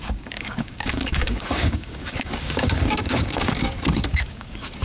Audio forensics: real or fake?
fake